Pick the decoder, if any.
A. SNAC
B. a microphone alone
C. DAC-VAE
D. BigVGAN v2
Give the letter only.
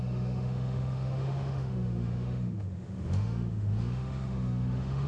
C